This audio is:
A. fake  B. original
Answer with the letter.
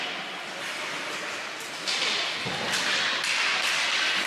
B